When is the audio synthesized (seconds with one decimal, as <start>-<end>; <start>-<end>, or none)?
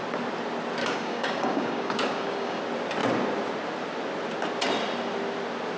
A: 0.8-2.6